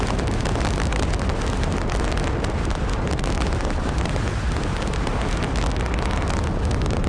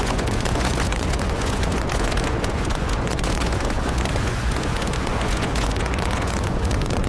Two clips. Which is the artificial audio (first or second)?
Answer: second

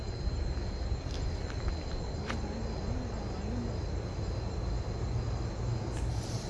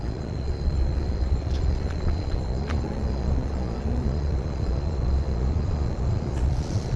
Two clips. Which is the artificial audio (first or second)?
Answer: second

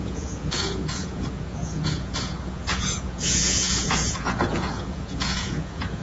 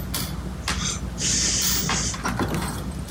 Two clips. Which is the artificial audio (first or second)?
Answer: first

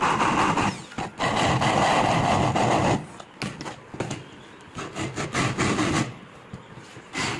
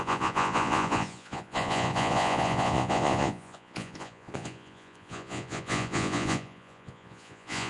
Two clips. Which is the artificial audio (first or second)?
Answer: second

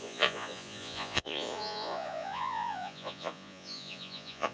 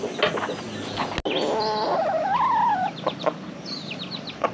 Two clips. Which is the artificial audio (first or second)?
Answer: first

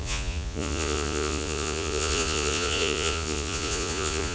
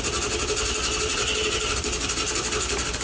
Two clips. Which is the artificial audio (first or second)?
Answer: first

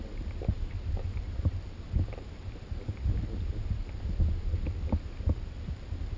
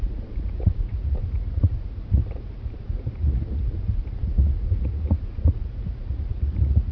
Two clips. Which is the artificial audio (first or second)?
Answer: second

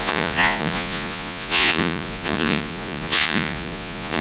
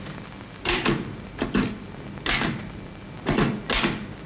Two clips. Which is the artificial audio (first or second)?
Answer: first